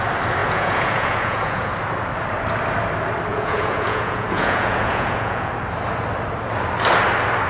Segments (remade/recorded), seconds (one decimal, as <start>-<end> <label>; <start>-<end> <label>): 0.0-0.4 recorded; 0.4-1.7 remade; 1.7-3.3 recorded; 3.3-5.5 remade; 5.5-7.5 recorded